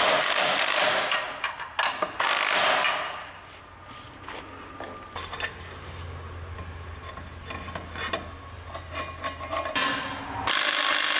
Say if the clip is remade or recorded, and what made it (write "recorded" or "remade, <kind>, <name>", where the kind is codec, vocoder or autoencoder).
recorded